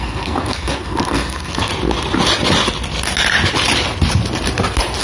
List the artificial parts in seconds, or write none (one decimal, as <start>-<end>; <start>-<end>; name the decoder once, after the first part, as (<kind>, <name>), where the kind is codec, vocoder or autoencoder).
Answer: 0.0-1.7 (codec, SNAC)